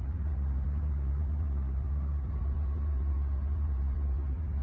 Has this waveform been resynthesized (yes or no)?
yes